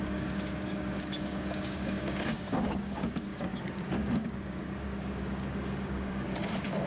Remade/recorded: remade